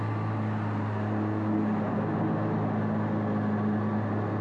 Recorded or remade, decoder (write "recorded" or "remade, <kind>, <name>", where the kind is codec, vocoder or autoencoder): recorded